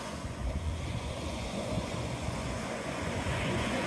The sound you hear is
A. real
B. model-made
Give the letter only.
B